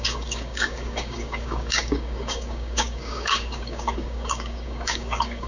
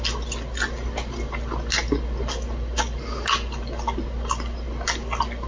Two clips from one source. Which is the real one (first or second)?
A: second